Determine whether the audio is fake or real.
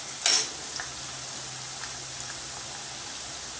real